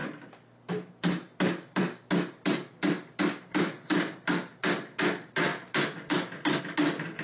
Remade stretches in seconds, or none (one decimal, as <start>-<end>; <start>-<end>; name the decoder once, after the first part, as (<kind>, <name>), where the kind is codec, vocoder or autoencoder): none